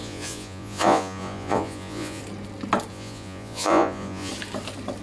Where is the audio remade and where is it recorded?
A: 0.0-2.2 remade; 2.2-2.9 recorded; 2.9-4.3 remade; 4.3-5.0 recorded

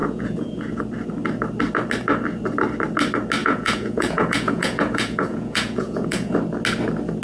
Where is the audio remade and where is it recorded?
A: 0.0-0.8 remade; 0.8-3.4 recorded; 3.4-6.4 remade; 6.4-7.2 recorded

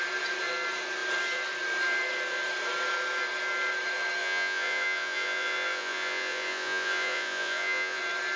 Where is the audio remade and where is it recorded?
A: 0.0-4.2 recorded; 4.2-8.0 remade; 8.0-8.4 recorded